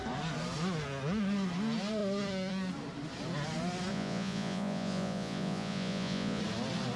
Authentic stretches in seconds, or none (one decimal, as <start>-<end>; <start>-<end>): 0.0-3.9; 6.4-7.0